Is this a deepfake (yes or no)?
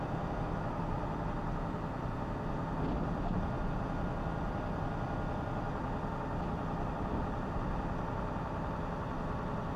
no